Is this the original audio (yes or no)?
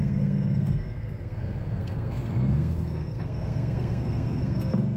no